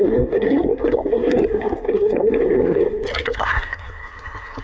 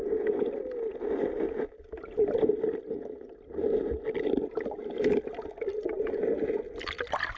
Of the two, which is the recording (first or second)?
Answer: second